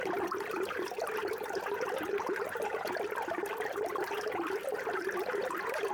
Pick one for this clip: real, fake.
fake